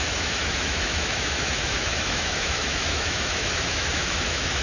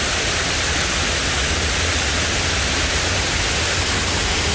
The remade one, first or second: first